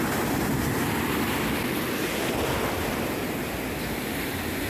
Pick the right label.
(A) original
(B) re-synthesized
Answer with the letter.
A